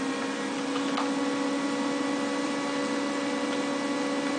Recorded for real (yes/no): yes